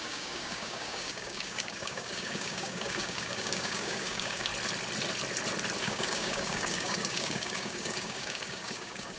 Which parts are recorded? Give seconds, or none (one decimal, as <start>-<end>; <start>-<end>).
4.5-5.8